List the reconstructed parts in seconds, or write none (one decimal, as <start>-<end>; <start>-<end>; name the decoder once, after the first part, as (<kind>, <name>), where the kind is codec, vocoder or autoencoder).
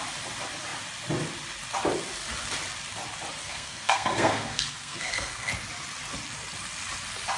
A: 3.4-5.5 (codec, SNAC)